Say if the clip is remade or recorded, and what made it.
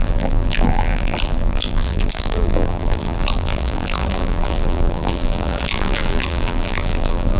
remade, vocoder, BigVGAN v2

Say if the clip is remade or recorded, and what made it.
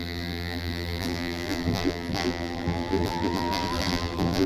remade, vocoder, BigVGAN v2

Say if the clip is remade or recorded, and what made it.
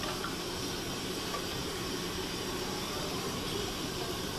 remade, vocoder, BigVGAN v2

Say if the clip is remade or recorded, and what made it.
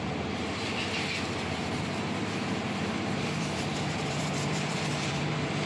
remade, vocoder, BigVGAN v2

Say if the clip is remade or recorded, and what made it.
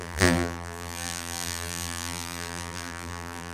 remade, vocoder, BigVGAN v2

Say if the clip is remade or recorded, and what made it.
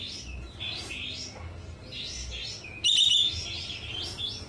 recorded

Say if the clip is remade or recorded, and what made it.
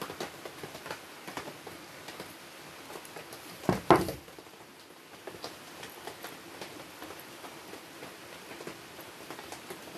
recorded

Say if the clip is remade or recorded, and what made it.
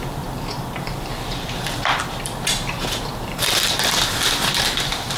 remade, vocoder, BigVGAN v2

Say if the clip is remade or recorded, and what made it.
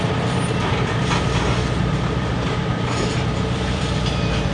remade, vocoder, BigVGAN v2